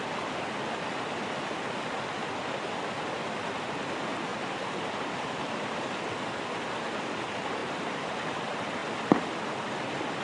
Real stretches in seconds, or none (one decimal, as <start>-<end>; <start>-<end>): 0.0-4.3; 5.9-7.6; 8.1-10.2